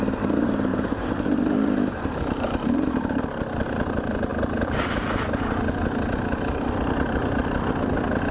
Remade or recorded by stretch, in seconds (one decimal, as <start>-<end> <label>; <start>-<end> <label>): 0.0-0.7 recorded; 0.7-3.2 remade; 3.2-8.3 recorded